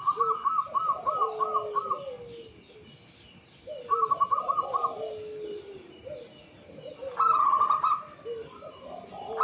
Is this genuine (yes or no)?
yes